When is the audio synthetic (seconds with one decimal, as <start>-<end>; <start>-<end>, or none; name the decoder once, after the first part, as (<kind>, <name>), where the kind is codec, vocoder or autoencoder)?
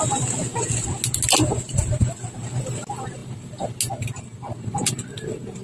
none